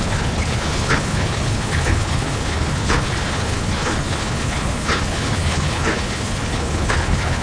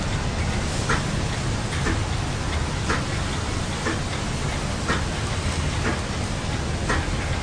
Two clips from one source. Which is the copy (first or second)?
first